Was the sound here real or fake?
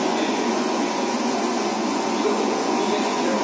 fake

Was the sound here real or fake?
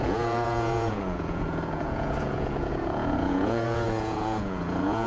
fake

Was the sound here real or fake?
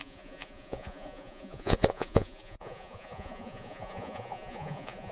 fake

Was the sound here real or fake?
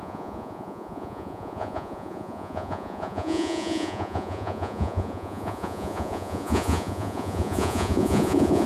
fake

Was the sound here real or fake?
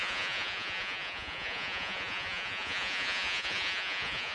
fake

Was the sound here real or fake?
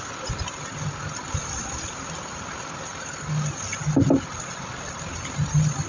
real